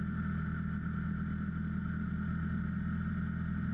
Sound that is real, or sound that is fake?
real